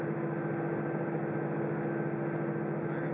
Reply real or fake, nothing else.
real